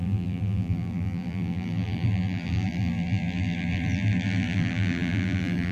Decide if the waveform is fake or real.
fake